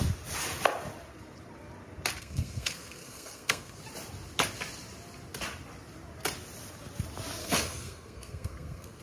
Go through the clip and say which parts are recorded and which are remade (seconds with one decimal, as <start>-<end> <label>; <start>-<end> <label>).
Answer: 0.0-2.2 recorded; 2.2-3.8 remade; 3.8-7.4 recorded; 7.4-9.0 remade